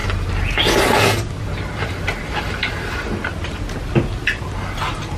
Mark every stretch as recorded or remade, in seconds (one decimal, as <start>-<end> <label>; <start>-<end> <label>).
0.0-5.2 recorded